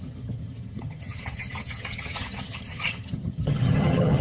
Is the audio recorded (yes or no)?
no